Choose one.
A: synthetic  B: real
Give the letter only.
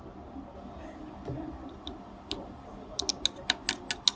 B